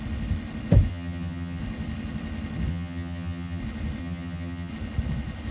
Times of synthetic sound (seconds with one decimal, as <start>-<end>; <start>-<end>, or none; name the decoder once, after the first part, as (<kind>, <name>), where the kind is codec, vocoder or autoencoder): 0.9-1.6 (vocoder, HiFi-GAN); 2.7-3.6; 4.0-4.7